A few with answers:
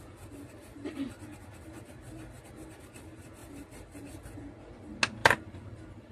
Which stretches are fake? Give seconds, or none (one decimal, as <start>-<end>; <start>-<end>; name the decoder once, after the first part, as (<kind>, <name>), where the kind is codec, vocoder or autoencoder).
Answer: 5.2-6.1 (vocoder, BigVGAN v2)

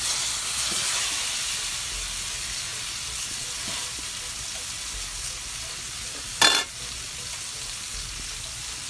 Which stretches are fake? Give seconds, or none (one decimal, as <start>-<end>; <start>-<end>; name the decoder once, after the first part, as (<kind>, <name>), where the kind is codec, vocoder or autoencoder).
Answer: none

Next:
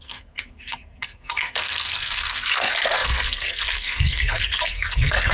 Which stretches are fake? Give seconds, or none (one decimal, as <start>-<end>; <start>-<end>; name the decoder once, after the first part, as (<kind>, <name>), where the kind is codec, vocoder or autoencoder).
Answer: 0.0-5.3 (codec, SNAC)

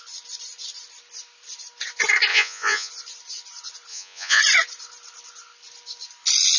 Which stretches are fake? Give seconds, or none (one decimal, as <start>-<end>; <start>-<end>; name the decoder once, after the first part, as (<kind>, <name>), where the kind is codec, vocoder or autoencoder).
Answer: 2.3-2.9 (vocoder, Vocos); 3.9-4.4

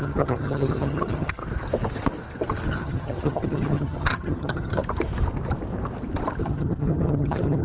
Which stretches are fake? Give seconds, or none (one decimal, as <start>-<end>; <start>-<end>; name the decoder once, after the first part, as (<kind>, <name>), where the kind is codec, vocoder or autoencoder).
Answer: 0.0-1.4 (vocoder, HiFi-GAN); 2.7-4.8; 6.4-7.6

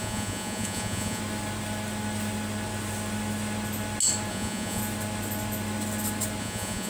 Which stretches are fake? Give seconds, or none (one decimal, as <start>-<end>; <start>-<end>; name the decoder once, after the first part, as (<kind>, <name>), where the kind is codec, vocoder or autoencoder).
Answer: 0.0-1.2 (vocoder, Vocos); 4.3-4.8; 6.4-6.9

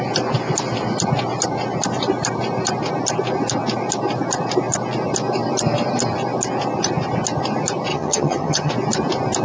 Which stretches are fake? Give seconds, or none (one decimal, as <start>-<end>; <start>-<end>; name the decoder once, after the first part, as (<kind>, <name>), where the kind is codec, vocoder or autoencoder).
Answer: 7.9-8.7 (vocoder, HiFi-GAN)